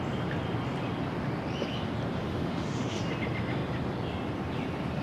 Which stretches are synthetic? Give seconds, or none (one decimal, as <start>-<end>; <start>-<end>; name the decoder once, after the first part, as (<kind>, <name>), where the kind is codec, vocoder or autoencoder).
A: 2.2-3.0 (autoencoder, DAC-VAE)